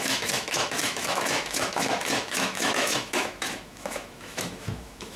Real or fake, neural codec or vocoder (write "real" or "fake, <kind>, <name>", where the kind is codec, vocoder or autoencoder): fake, autoencoder, DAC-VAE